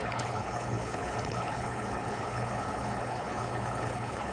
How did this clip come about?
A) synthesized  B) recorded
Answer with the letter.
A